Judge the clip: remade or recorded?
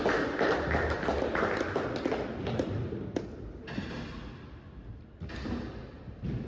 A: recorded